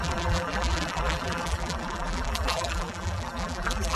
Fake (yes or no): yes